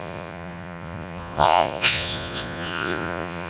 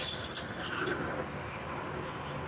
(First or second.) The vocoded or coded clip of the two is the first